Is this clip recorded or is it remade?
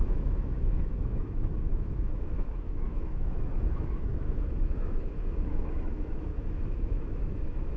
remade